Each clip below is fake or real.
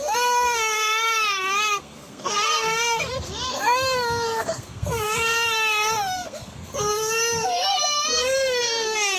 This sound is fake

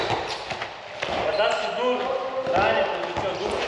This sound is real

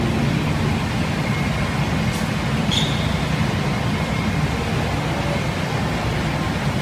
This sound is real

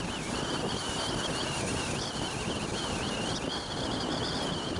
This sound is real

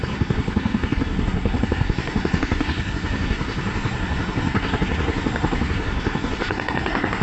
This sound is fake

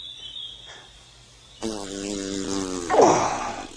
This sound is real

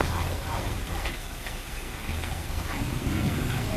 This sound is fake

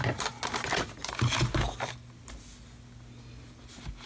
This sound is real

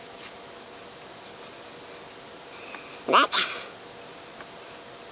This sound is real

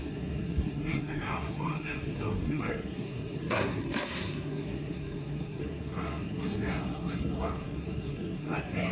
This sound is fake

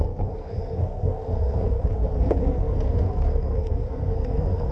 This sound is fake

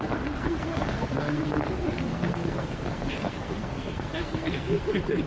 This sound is fake